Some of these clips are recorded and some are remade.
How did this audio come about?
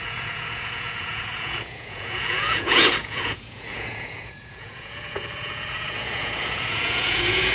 remade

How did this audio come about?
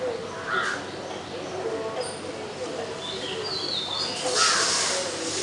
recorded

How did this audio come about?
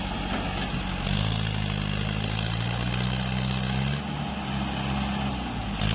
recorded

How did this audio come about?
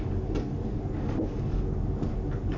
remade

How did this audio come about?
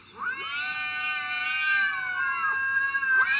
recorded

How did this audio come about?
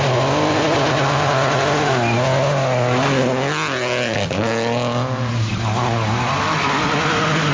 recorded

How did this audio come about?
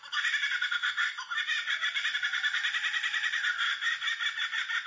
recorded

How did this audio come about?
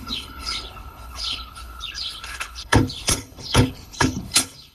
remade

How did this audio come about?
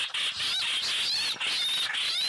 recorded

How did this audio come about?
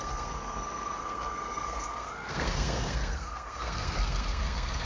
remade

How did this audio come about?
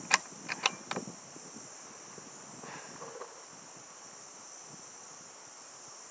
recorded